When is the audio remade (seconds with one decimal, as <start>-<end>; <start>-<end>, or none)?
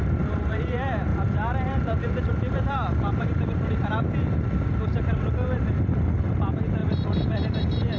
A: 0.0-8.0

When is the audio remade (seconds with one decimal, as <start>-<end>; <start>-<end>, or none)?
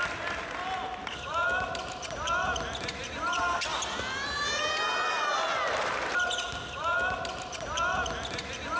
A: none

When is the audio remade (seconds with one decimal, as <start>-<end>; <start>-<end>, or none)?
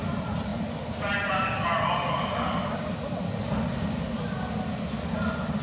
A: none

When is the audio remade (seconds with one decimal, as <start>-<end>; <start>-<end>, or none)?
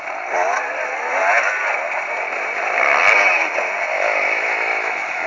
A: 3.9-5.3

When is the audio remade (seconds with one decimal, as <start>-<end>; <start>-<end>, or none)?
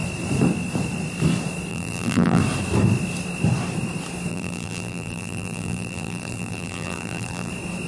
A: 1.7-2.4; 4.3-7.5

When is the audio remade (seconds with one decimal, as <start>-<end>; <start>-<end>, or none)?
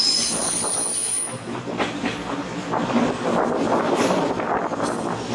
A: none